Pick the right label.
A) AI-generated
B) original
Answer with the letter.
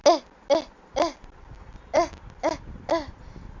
B